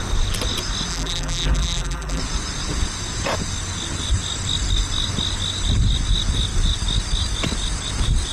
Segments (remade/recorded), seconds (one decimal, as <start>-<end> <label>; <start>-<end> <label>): 0.0-0.9 recorded; 0.9-2.2 remade; 2.2-8.3 recorded